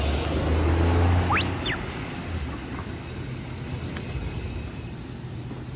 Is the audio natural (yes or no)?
yes